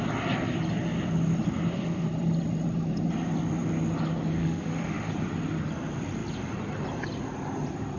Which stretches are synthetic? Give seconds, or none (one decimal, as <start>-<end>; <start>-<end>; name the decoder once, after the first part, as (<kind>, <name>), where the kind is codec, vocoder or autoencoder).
4.4-5.1 (autoencoder, DAC-VAE)